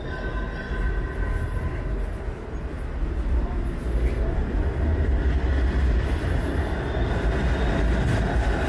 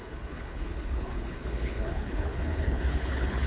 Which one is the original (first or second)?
first